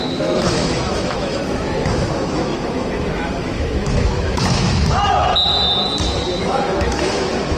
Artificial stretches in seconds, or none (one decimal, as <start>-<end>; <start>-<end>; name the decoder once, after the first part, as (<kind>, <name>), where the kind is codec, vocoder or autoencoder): 0.0-5.3 (autoencoder, DAC-VAE); 6.4-7.6